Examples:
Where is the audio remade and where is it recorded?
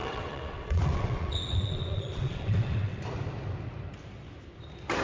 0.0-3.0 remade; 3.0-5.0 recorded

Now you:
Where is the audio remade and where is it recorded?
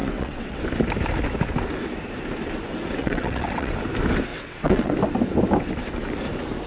0.0-0.6 remade; 0.6-3.0 recorded; 3.0-3.7 remade; 3.7-4.3 recorded; 4.3-4.9 remade; 4.9-6.7 recorded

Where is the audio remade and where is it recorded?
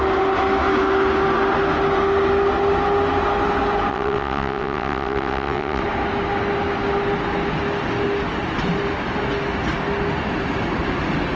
0.0-3.9 recorded; 3.9-5.8 remade; 5.8-11.4 recorded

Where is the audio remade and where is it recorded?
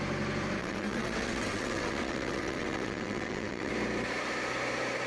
0.0-0.6 recorded; 0.6-3.7 remade; 3.7-5.1 recorded